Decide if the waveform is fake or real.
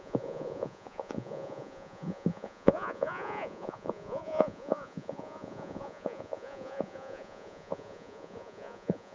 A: fake